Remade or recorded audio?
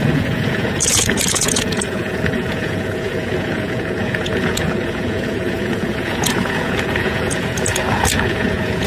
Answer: remade